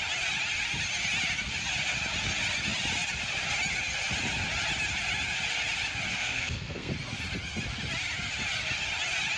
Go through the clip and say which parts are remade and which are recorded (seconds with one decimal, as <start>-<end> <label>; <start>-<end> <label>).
0.0-6.2 recorded; 6.2-6.9 remade; 6.9-9.4 recorded